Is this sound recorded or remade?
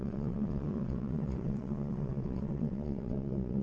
remade